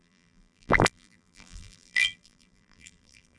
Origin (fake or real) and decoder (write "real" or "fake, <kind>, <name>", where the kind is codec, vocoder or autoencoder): fake, vocoder, BigVGAN v2